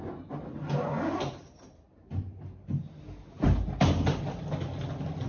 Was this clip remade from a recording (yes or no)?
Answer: no